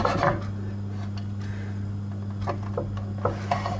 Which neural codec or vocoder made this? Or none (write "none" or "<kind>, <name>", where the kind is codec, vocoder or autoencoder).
none